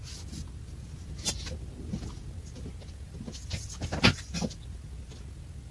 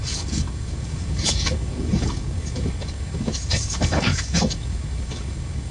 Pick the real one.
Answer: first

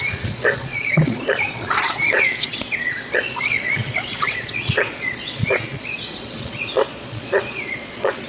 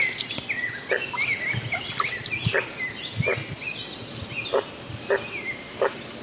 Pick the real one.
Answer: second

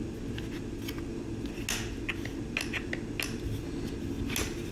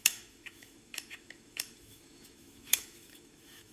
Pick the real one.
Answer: first